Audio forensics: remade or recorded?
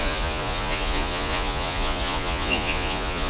remade